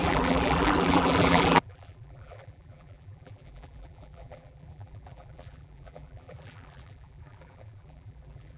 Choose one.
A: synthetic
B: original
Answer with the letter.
A